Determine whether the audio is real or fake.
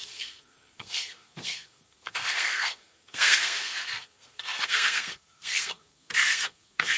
fake